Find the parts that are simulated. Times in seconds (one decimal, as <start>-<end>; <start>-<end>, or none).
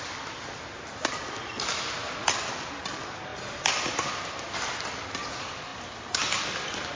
0.0-5.7